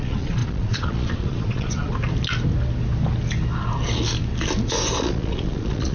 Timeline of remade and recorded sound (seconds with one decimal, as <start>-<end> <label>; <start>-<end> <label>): 0.0-1.9 remade; 1.9-5.0 recorded; 5.0-5.9 remade

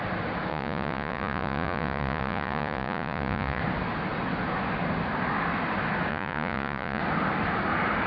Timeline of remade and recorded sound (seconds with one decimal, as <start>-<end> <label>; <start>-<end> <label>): 0.0-0.5 recorded; 0.5-3.6 remade; 3.6-6.1 recorded; 6.1-7.0 remade; 7.0-8.1 recorded

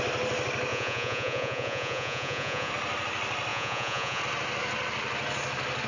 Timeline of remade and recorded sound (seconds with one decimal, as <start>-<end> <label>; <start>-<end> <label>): 0.0-0.7 recorded; 0.7-2.7 remade; 2.7-3.5 recorded; 3.5-4.2 remade; 4.2-5.9 recorded

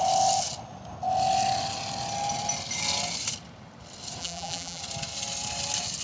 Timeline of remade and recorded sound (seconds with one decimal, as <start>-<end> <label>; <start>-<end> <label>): 0.0-4.2 recorded; 4.2-4.8 remade; 4.8-6.0 recorded

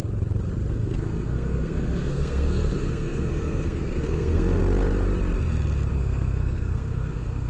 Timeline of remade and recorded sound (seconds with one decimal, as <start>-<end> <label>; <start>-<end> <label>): 0.0-0.7 recorded; 0.7-4.6 remade; 4.6-5.9 recorded; 5.9-7.5 remade

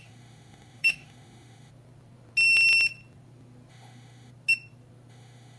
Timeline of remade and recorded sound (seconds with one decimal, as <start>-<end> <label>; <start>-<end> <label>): 0.0-1.7 remade; 1.7-3.7 recorded; 3.7-4.3 remade; 4.3-5.1 recorded; 5.1-5.6 remade